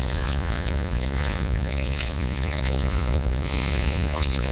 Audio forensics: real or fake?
fake